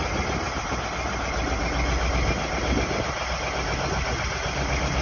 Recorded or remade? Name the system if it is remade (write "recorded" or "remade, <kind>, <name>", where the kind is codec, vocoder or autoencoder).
recorded